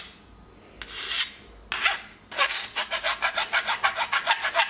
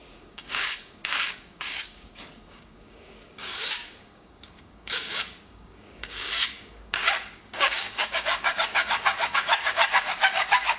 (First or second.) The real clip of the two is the first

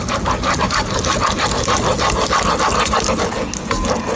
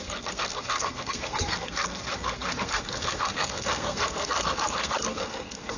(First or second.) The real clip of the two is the first